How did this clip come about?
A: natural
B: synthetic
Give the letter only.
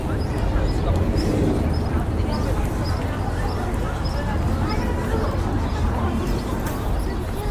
A